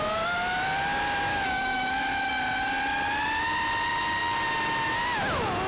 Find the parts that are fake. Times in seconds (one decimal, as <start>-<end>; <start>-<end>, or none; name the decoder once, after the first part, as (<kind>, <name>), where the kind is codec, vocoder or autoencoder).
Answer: 1.3-2.3 (autoencoder, DAC-VAE)